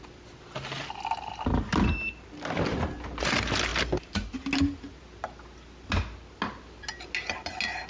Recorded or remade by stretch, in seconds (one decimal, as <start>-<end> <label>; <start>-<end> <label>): 0.0-7.9 recorded